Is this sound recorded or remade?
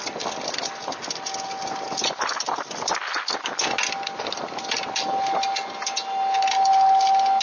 recorded